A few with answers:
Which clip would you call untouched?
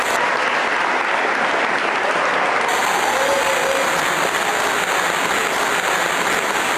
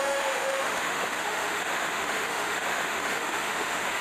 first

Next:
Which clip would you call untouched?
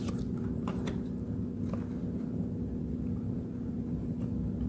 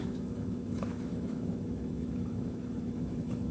first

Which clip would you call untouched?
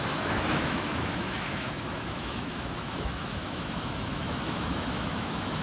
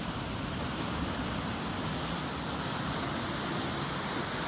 second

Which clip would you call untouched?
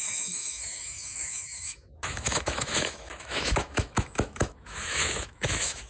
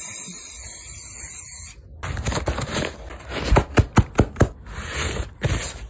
second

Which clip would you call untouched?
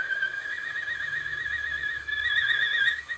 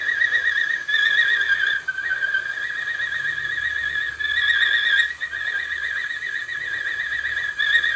second